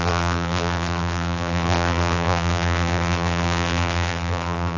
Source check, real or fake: fake